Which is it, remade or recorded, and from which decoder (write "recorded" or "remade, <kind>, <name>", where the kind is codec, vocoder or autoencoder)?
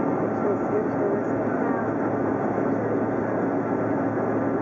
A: recorded